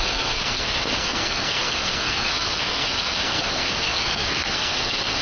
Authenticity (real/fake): fake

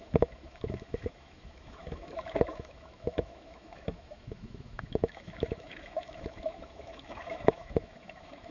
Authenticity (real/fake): fake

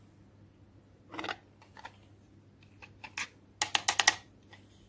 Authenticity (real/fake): real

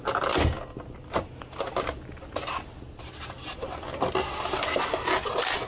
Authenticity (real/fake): real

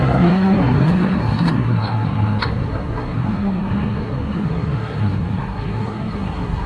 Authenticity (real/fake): fake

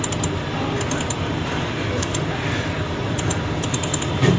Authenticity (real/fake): real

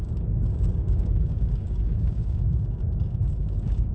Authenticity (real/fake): fake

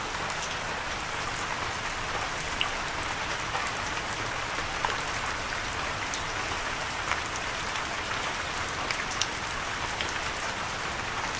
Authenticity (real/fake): real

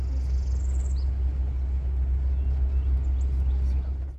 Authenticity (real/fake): real